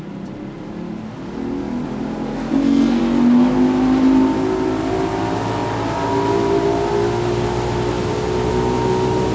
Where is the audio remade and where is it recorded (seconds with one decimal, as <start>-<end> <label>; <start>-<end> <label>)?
0.0-2.3 recorded; 2.3-3.0 remade; 3.0-9.3 recorded